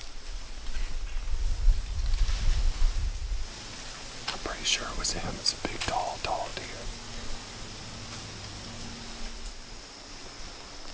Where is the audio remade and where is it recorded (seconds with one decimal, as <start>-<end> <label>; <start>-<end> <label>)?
0.0-10.9 recorded